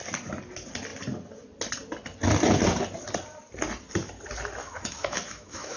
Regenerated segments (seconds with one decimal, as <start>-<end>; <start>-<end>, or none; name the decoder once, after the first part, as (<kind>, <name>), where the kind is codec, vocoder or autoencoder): 4.6-5.8 (autoencoder, DAC-VAE)